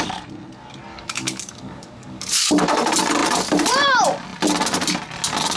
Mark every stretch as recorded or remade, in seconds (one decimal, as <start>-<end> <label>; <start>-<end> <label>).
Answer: 0.0-0.9 recorded; 0.9-2.5 remade; 2.5-5.6 recorded